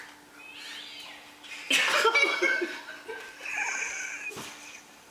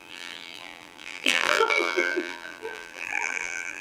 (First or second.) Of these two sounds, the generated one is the second